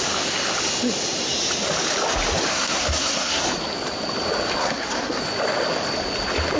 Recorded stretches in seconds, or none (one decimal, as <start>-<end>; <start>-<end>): 0.0-2.5; 3.4-4.6; 5.2-6.6